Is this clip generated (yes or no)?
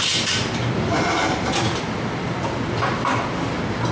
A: yes